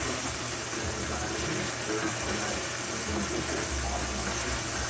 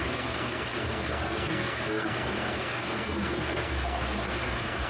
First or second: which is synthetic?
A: second